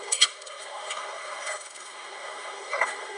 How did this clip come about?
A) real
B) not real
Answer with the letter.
B